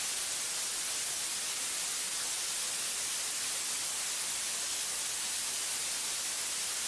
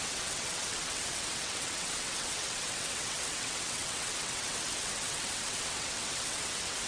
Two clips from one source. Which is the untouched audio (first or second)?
first